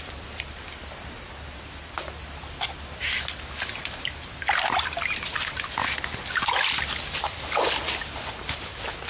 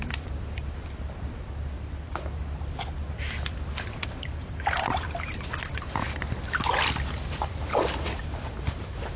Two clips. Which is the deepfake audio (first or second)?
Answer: second